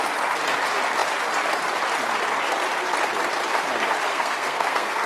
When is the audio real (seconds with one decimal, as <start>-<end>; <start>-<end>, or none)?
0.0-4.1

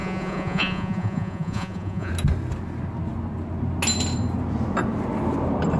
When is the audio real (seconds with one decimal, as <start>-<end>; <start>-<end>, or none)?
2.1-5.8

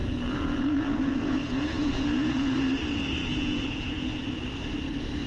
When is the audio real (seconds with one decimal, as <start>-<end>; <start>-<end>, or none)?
2.7-3.2; 4.4-5.3

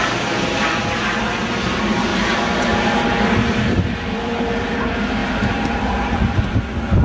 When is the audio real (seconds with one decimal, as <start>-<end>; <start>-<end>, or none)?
0.0-2.1; 4.8-5.2; 6.6-7.0

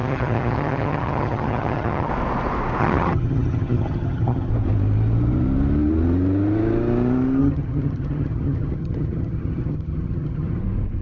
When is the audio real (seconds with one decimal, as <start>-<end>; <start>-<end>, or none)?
2.1-2.8; 4.5-7.4; 10.6-11.0

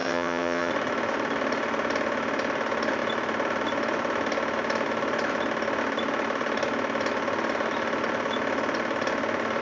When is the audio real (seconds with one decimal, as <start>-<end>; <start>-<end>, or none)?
0.7-9.6

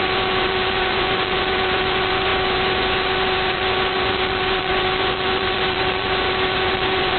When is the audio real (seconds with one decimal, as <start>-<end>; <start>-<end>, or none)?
none

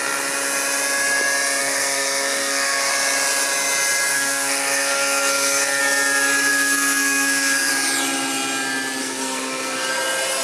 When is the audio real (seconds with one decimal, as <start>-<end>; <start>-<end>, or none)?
0.0-1.6; 2.9-4.1; 5.8-6.5; 7.7-9.0; 9.9-10.4